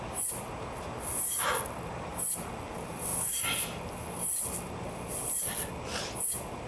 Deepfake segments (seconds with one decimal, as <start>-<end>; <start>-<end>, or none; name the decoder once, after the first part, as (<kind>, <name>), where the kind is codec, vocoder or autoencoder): none